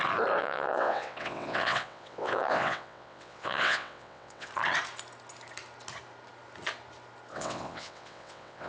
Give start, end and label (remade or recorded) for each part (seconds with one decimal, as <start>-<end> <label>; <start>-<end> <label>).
0.0-0.4 recorded; 0.4-4.5 remade; 4.5-7.3 recorded; 7.3-8.7 remade